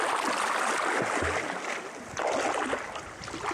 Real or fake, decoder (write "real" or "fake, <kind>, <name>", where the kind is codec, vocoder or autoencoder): real